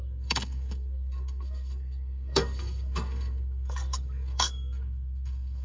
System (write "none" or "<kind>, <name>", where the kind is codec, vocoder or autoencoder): codec, SNAC